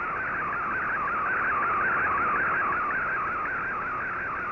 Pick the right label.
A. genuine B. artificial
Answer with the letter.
A